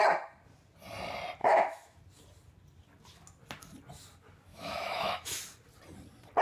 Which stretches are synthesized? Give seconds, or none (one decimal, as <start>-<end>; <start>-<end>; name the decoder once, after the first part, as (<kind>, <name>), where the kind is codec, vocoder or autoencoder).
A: 1.4-2.0 (autoencoder, DAC-VAE); 4.5-5.4